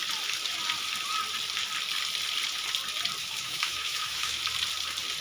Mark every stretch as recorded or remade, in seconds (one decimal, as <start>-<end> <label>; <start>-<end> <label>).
0.0-3.2 recorded; 3.2-4.4 remade; 4.4-5.2 recorded